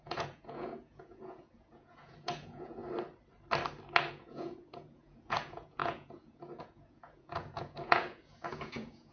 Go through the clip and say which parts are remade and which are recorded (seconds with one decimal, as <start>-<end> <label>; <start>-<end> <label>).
0.0-2.8 remade; 2.8-4.1 recorded; 4.1-9.1 remade